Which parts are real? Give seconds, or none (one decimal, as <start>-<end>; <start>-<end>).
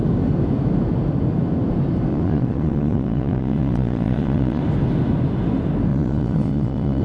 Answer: 0.0-2.1; 4.6-5.9